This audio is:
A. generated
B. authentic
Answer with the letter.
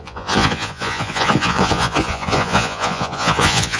A